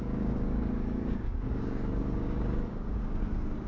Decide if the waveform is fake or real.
fake